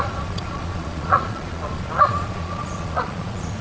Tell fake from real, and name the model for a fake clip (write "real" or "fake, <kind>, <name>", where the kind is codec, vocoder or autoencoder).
fake, vocoder, Vocos